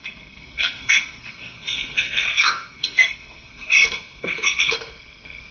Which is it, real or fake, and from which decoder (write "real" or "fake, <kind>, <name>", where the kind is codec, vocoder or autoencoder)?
fake, codec, SNAC